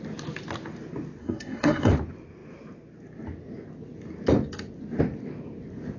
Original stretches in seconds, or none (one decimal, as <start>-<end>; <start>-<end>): 0.0-1.2; 1.9-6.0